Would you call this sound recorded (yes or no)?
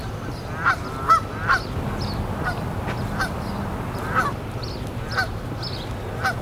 yes